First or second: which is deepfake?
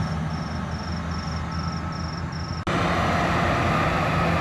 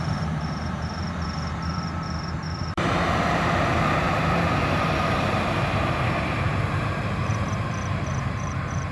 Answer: second